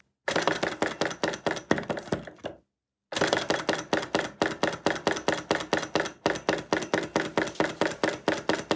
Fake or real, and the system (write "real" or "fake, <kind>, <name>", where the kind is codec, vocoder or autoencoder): real